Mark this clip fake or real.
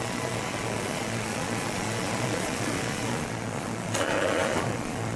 fake